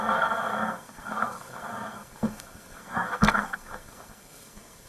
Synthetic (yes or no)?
yes